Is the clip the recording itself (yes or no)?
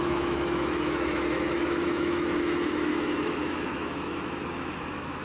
no